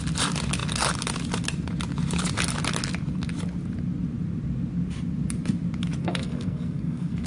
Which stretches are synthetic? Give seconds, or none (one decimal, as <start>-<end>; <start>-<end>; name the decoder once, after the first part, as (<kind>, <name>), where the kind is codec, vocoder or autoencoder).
6.0-7.3 (codec, SNAC)

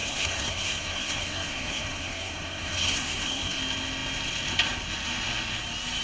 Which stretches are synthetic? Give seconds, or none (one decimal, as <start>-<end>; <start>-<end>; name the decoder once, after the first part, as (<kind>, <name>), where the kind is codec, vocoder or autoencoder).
0.0-3.6 (codec, SNAC)

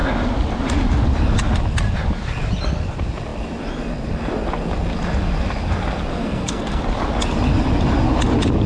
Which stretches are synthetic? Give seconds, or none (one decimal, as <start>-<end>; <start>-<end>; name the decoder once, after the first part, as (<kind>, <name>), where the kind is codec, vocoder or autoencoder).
6.1-6.8 (codec, SNAC)